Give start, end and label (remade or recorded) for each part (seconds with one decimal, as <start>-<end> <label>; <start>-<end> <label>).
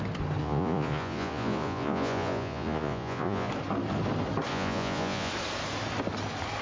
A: 0.0-0.4 recorded; 0.4-3.5 remade; 3.5-4.5 recorded; 4.5-5.3 remade; 5.3-6.6 recorded